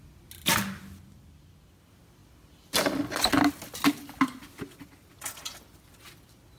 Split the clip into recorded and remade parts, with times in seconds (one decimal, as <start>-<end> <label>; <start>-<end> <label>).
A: 0.0-6.6 recorded